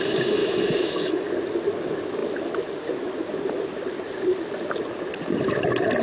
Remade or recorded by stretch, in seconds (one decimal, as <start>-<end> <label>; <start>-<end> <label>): 0.0-0.4 recorded; 0.4-1.3 remade; 1.3-6.0 recorded